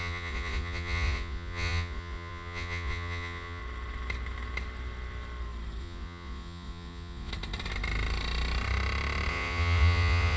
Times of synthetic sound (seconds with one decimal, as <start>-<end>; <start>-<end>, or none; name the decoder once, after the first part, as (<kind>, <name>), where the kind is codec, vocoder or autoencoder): 0.0-3.6 (vocoder, Vocos); 5.8-7.3; 9.3-10.4

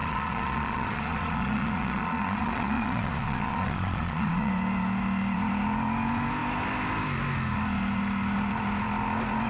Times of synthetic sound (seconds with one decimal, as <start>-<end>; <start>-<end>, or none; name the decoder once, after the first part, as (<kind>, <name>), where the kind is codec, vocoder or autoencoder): 0.0-4.5 (vocoder, Vocos)